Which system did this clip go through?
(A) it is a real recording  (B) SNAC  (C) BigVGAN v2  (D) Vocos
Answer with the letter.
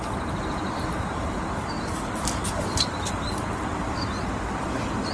A